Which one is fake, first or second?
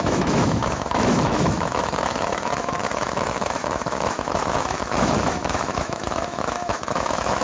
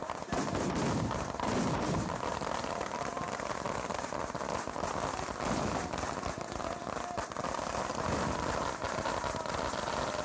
first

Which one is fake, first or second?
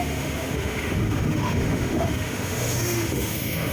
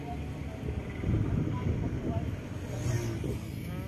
first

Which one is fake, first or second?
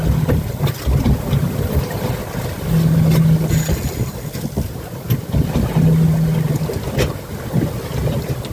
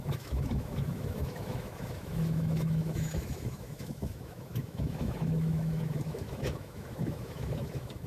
second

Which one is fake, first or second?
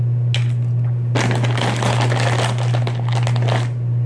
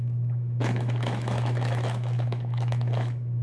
second